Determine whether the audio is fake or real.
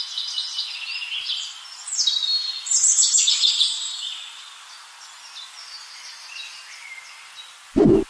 real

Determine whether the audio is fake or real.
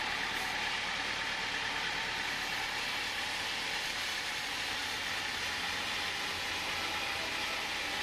real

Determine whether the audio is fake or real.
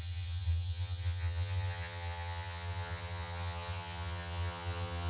fake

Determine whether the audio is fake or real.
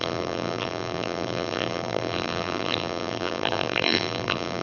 fake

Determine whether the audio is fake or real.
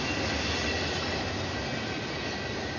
real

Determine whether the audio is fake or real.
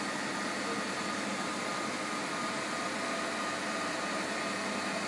real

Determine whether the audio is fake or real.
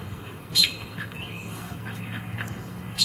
fake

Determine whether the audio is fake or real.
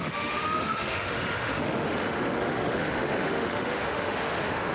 fake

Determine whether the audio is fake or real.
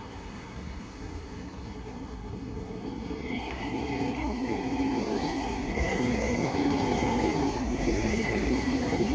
fake